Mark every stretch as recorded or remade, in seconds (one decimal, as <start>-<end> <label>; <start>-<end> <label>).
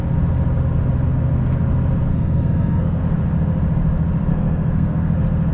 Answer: 0.0-2.1 recorded; 2.1-3.0 remade; 3.0-4.3 recorded; 4.3-5.1 remade; 5.1-5.5 recorded